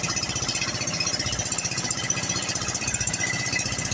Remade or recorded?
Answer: recorded